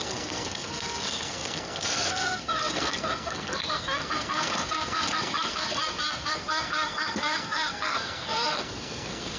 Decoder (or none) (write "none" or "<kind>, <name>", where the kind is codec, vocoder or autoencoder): codec, SNAC